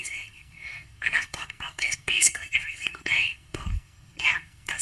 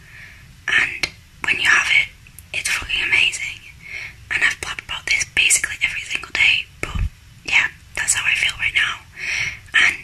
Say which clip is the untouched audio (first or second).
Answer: second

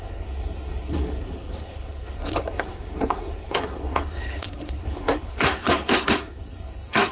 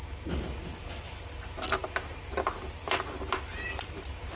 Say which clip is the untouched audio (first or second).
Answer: second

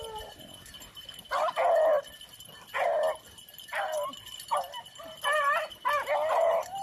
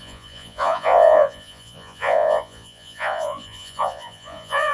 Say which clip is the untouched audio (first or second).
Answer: first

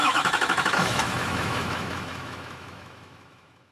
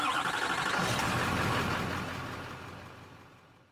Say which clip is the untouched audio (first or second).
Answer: second